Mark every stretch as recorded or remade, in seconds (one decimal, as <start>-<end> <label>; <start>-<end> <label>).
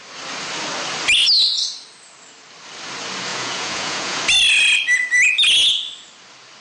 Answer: 0.0-3.3 recorded; 3.3-4.2 remade; 4.2-6.6 recorded